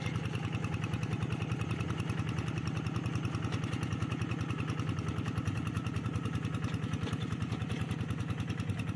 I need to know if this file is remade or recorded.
recorded